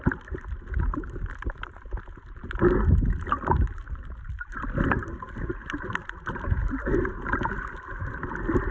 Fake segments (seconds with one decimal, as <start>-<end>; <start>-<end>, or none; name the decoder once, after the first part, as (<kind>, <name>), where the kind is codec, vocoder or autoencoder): none